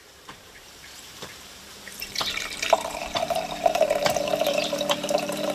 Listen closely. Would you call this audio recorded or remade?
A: remade